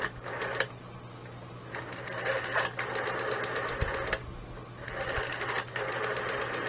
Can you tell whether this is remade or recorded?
recorded